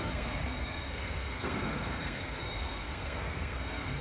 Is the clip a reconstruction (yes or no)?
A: yes